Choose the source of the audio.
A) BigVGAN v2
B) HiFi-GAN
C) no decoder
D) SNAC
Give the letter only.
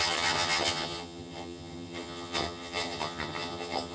B